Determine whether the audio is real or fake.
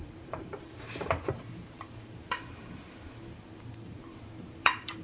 fake